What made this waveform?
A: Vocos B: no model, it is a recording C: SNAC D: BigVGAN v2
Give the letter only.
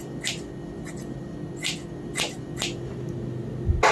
B